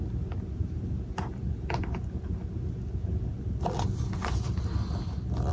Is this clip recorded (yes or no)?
yes